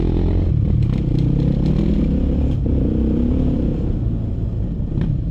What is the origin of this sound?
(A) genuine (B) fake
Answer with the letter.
A